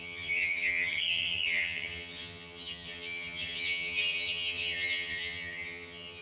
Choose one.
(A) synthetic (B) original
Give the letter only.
A